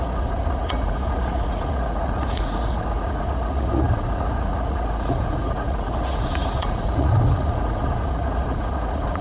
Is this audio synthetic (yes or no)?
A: yes